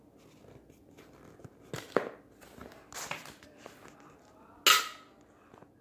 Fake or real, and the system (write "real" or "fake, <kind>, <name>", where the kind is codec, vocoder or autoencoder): real